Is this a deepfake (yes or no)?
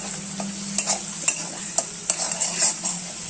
no